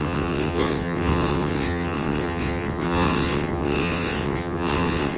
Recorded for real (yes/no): no